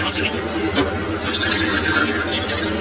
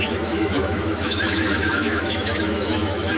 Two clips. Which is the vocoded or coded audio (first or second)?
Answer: second